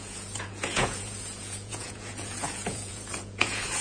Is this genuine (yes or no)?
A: no